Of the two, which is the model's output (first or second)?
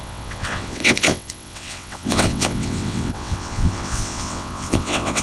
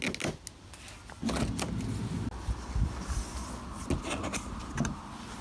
first